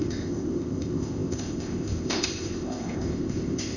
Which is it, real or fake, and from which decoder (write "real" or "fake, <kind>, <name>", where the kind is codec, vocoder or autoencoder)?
fake, codec, ZipCodec